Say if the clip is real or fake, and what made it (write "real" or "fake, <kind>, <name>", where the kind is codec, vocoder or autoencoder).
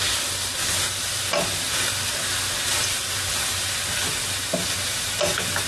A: real